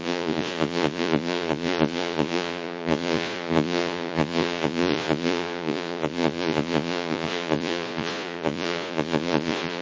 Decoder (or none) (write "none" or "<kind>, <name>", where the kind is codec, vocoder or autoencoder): vocoder, Vocos